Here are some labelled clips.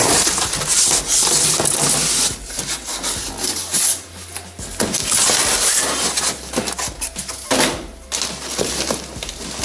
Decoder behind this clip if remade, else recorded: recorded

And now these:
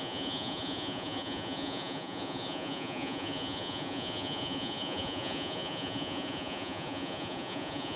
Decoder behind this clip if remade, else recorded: remade, vocoder, Vocos